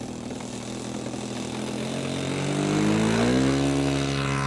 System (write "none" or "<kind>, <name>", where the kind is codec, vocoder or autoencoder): none